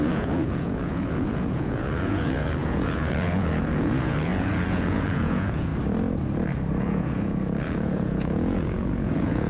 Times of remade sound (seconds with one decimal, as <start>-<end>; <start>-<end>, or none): 0.0-5.7; 6.8-9.5